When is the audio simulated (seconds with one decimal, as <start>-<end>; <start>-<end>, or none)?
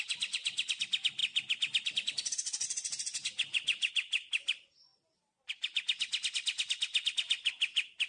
none